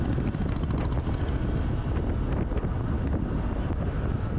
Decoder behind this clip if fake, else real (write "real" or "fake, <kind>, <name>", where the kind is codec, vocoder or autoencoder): real